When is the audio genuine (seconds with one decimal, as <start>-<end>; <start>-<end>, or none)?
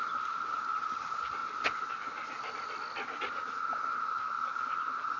0.0-5.2